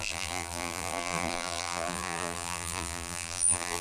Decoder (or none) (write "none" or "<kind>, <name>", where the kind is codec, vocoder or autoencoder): vocoder, BigVGAN v2